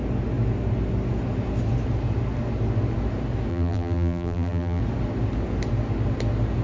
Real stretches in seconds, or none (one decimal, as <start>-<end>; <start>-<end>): 0.0-3.5; 4.8-6.6